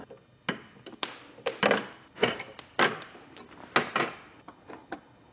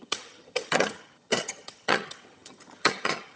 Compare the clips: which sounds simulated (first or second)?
second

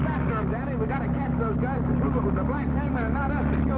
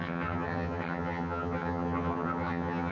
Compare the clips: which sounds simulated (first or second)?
second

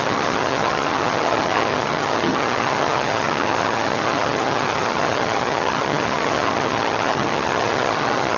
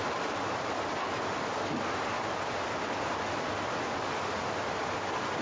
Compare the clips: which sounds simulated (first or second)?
first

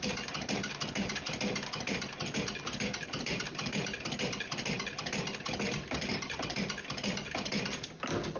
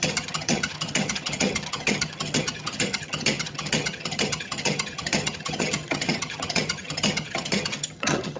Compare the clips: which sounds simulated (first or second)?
second